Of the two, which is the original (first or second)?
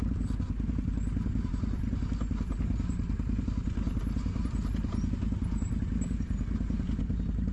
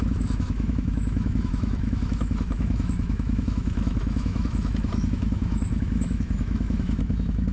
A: first